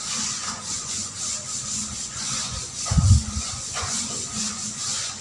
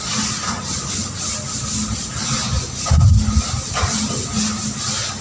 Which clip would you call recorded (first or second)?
second